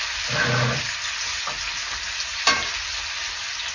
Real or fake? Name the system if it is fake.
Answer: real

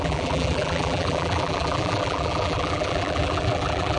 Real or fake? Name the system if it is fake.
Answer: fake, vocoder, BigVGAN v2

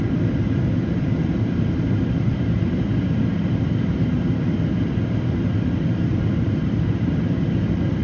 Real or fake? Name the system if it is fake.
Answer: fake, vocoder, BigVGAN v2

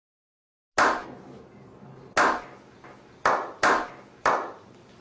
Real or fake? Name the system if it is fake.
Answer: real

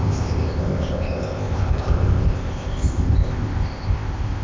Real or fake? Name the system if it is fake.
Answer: fake, codec, ZipCodec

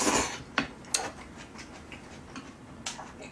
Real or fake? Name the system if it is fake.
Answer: real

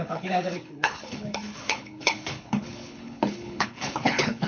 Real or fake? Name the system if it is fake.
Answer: fake, codec, HILCodec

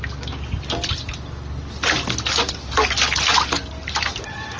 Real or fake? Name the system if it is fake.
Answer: real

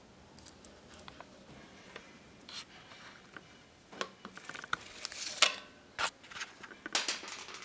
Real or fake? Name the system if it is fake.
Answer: real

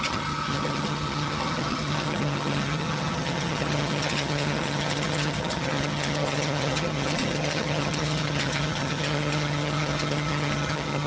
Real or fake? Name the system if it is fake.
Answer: fake, vocoder, HiFi-GAN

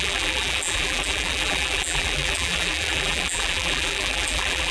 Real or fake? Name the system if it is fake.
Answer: fake, vocoder, BigVGAN v2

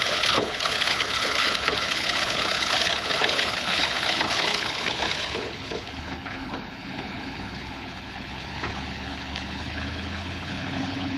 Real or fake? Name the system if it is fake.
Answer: fake, codec, HILCodec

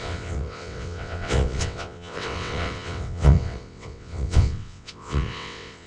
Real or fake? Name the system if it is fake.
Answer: fake, vocoder, WaveNeXt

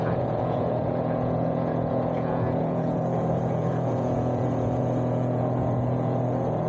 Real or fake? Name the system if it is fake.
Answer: fake, vocoder, Vocos